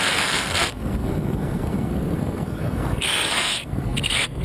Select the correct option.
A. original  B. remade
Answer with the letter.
B